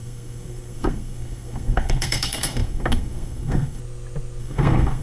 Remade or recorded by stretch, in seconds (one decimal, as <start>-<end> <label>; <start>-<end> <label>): 0.0-3.8 remade; 3.8-4.4 recorded; 4.4-5.0 remade